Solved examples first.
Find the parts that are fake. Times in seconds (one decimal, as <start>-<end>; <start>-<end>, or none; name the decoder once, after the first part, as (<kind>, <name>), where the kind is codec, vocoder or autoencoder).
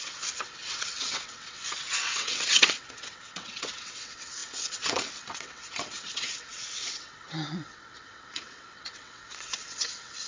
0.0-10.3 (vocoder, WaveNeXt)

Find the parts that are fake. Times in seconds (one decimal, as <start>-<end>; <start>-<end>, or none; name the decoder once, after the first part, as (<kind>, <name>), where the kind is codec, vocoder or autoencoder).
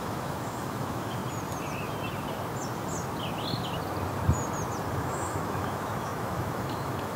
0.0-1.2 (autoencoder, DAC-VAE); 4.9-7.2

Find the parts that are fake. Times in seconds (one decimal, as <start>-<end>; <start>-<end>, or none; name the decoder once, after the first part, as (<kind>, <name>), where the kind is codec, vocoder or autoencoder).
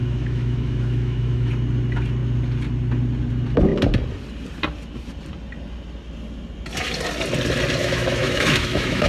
0.0-1.5 (autoencoder, DAC-VAE); 7.8-9.1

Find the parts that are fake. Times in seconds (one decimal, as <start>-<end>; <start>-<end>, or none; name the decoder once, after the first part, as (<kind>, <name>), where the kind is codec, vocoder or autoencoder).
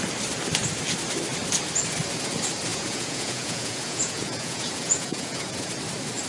2.7-5.7 (vocoder, Vocos)